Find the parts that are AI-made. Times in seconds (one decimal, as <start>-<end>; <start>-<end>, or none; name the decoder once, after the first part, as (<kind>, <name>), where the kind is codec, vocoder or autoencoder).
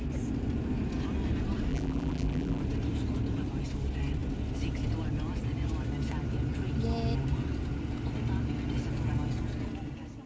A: 1.7-2.6 (vocoder, BigVGAN v2)